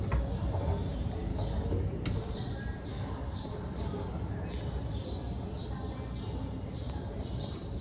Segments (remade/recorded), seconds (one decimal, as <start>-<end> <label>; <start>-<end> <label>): 0.0-1.3 recorded; 1.3-1.9 remade; 1.9-2.9 recorded; 2.9-4.3 remade; 4.3-7.8 recorded